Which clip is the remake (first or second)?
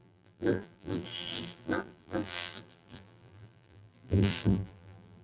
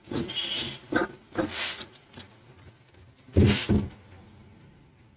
first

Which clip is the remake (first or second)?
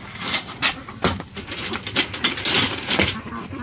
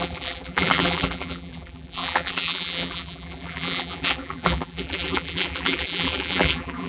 second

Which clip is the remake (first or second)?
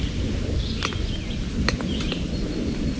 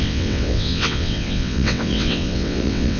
second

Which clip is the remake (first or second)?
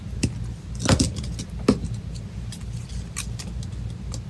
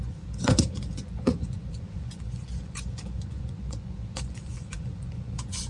second